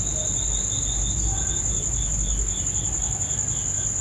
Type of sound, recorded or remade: recorded